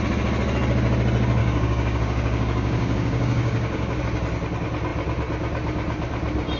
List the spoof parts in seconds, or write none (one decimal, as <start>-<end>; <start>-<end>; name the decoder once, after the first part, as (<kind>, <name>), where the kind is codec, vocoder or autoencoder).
1.4-4.0 (codec, DAC)